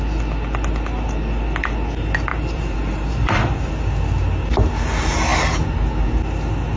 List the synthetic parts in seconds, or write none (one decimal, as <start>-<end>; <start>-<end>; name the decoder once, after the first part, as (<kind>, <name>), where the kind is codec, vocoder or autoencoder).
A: 2.3-3.7 (vocoder, BigVGAN v2)